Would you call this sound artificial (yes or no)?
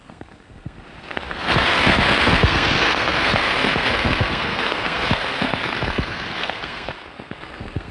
yes